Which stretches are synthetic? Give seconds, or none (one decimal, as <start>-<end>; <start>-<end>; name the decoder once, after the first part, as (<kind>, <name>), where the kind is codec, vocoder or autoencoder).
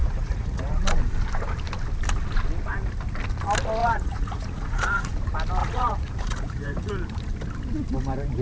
0.0-0.8 (vocoder, Vocos); 3.8-5.1; 5.6-6.9